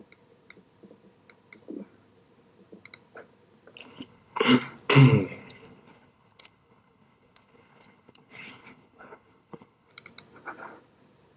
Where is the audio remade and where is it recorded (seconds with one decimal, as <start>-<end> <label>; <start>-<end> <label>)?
0.0-3.8 recorded; 3.8-4.4 remade; 4.4-5.4 recorded; 5.4-9.9 remade; 9.9-11.4 recorded